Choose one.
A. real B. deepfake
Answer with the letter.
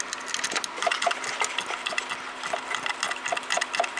A